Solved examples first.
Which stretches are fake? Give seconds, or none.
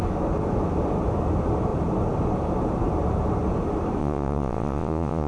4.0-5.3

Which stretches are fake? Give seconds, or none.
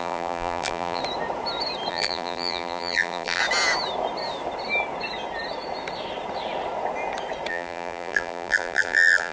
0.0-1.0; 1.9-3.4; 7.5-9.3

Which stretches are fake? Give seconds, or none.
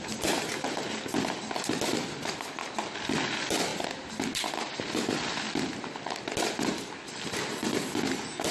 none